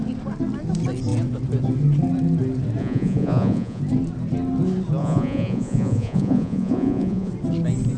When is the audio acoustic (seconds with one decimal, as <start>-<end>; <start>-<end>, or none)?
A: 0.0-2.8; 3.8-5.0; 7.3-8.0

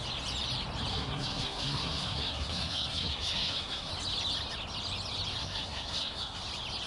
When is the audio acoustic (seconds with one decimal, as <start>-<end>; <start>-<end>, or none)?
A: 0.0-0.9; 3.9-5.4; 6.4-6.9

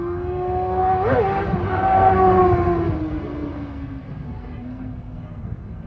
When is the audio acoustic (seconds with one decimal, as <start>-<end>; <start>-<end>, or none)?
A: 0.8-1.7; 2.4-3.0

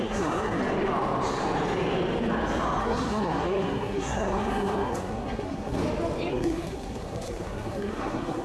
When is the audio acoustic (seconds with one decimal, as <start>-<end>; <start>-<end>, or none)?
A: 0.6-2.8; 5.8-6.3

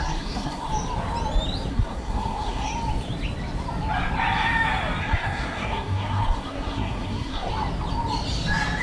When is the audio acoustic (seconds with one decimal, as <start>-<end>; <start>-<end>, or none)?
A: 0.7-1.7; 2.7-5.0; 7.5-8.8

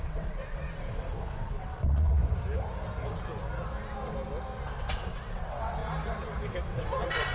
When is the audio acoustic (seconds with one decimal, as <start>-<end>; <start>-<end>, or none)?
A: 2.2-4.8; 5.8-6.6

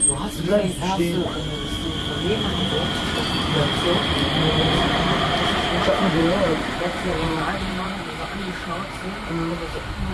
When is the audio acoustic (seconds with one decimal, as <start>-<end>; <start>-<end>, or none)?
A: 0.0-6.2; 9.3-10.1